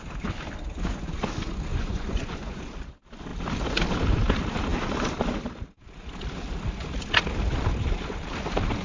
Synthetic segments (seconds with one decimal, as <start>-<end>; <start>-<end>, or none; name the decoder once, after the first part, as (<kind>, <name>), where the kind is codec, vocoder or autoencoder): 1.7-2.6 (vocoder, Vocos)